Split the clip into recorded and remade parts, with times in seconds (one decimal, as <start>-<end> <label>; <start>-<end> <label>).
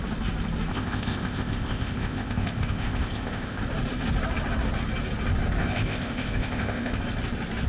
0.0-0.7 recorded; 0.7-3.6 remade; 3.6-5.6 recorded; 5.6-7.0 remade; 7.0-7.7 recorded